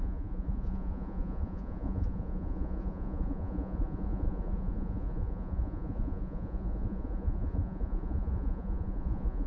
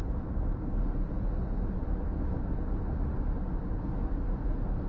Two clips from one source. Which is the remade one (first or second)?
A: first